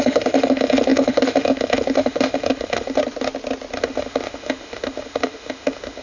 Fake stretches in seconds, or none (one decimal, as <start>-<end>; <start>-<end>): 0.0-3.0; 3.8-6.0